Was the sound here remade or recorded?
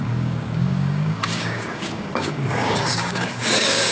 remade